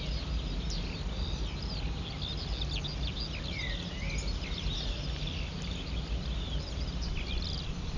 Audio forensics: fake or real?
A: real